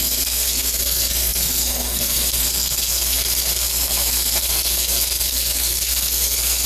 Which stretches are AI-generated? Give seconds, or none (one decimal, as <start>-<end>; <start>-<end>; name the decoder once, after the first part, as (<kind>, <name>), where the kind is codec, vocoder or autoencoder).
0.0-6.7 (codec, SNAC)